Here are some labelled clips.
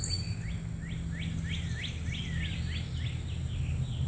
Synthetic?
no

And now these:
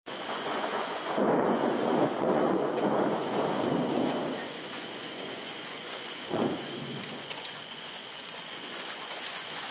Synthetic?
yes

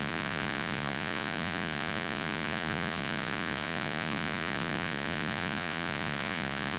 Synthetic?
yes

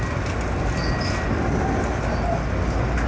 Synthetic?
no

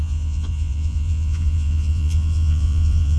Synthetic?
yes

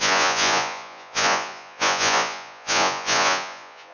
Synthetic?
yes